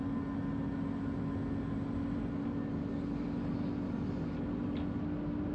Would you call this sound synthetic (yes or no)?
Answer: no